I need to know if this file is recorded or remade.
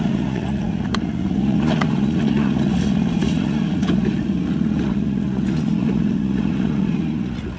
remade